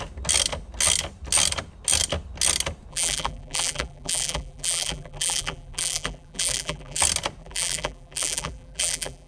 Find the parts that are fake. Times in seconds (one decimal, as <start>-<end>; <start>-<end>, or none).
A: 2.9-7.0; 7.4-9.3

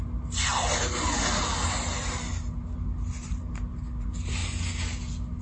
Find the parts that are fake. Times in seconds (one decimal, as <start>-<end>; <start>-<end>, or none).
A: none

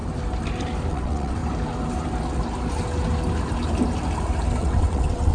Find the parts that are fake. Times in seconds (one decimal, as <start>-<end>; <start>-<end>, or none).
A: 0.9-1.4; 4.6-5.3

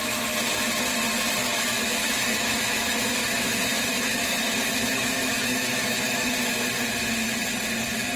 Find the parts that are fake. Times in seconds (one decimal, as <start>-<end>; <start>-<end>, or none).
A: 1.4-6.3

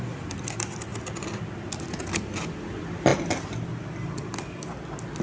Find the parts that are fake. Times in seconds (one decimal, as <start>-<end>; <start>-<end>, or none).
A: none

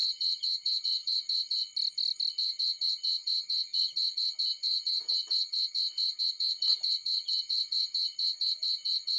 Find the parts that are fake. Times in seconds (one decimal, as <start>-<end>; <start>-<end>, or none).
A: 0.0-1.7; 2.3-9.2

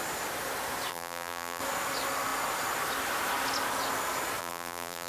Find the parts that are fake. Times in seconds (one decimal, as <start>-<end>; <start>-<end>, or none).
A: 0.9-1.6; 4.4-5.1

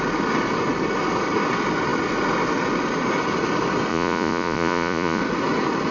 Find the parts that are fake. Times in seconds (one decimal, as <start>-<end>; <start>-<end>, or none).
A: 3.9-5.2